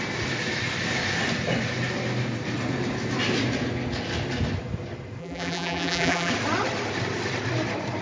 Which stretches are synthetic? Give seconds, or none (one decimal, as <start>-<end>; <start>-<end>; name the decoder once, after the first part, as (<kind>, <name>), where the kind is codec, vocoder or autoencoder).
5.2-6.3 (vocoder, BigVGAN v2)